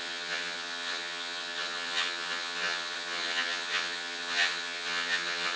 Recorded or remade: remade